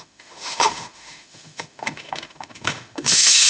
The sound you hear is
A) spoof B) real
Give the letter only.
A